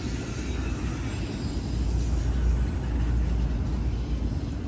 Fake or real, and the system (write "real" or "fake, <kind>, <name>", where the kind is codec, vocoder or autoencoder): real